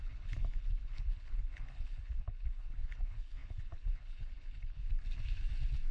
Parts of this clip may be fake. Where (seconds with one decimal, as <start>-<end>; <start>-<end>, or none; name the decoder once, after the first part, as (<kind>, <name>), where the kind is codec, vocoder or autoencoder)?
0.0-4.8 (codec, HILCodec)